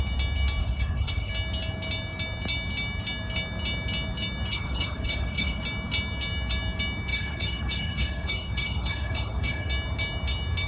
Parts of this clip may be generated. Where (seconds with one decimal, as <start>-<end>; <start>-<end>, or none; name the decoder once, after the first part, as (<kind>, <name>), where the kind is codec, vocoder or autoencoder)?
0.6-1.3 (codec, HILCodec); 4.5-5.6; 7.1-9.7

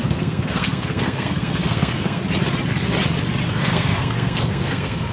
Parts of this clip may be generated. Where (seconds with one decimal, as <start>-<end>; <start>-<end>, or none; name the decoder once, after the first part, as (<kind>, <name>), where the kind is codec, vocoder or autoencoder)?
0.0-2.2 (codec, SNAC); 3.5-5.1